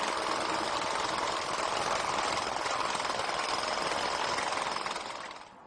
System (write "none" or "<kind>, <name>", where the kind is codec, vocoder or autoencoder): none